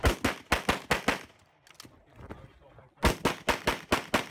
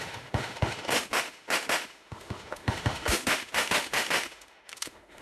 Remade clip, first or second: second